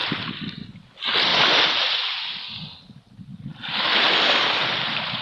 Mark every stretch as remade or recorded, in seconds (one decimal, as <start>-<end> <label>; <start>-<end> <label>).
0.0-3.3 recorded; 3.3-5.2 remade